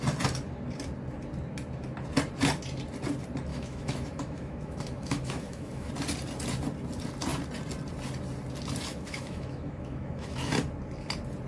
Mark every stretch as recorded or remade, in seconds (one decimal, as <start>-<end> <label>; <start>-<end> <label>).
0.0-3.5 recorded; 3.5-5.9 remade; 5.9-8.9 recorded; 8.9-10.5 remade; 10.5-11.5 recorded